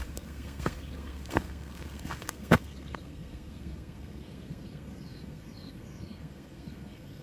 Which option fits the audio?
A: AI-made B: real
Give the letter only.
A